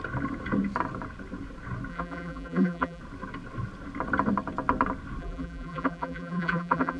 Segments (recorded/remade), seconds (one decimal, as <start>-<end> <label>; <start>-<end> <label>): 0.0-1.9 recorded; 1.9-3.0 remade; 3.0-5.2 recorded; 5.2-7.0 remade